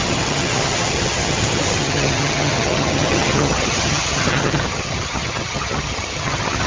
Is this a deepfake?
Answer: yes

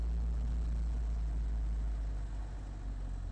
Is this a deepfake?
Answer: no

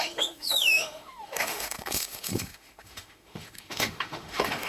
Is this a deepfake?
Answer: yes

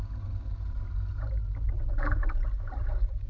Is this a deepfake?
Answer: no